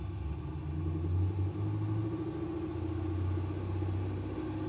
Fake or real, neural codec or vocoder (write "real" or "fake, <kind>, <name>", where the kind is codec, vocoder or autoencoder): real